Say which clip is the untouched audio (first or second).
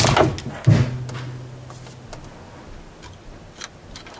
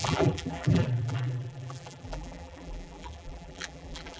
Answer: first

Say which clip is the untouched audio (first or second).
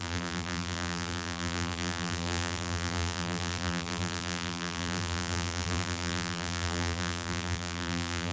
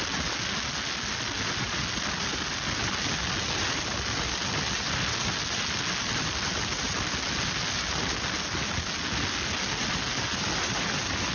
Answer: second